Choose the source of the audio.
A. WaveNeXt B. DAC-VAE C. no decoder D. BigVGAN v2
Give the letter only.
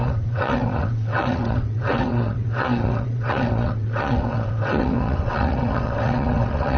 A